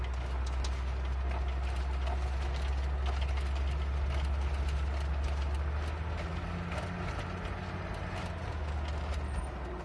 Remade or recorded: recorded